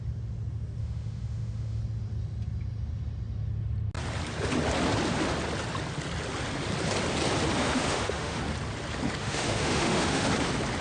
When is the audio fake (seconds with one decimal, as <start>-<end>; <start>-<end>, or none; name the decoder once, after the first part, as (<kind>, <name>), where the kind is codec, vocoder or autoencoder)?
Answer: 0.8-1.8 (autoencoder, DAC-VAE); 7.6-8.4; 9.2-10.3

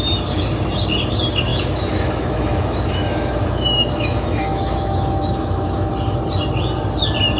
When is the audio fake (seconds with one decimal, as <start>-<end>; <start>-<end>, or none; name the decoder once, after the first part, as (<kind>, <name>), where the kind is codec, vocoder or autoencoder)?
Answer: 1.5-5.9 (autoencoder, DAC-VAE)

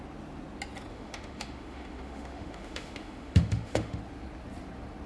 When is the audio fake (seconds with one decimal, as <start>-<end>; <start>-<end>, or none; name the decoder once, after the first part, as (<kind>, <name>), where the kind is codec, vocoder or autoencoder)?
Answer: 0.9-4.0 (autoencoder, DAC-VAE)